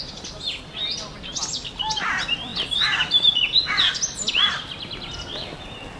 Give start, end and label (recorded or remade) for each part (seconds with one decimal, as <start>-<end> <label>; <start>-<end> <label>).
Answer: 0.0-6.0 recorded